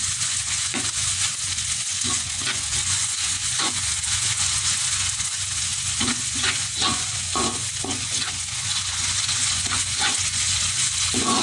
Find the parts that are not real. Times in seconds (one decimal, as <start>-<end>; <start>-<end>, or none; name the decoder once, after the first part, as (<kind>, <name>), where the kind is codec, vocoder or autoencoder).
0.0-11.4 (vocoder, Vocos)